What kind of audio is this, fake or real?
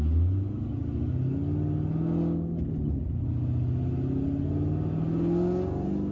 real